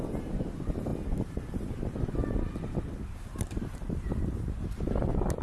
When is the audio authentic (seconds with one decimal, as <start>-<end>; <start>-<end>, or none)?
0.0-5.4